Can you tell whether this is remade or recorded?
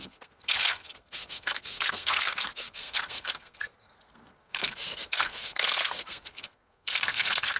remade